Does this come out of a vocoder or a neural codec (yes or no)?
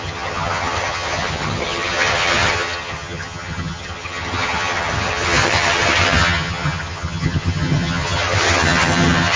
yes